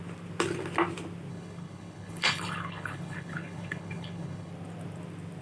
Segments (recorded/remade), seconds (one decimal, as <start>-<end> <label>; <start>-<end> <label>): 0.0-1.3 recorded; 1.3-4.5 remade; 4.5-5.4 recorded